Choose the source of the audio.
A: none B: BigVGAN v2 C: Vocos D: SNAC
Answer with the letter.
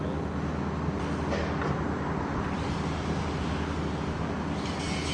A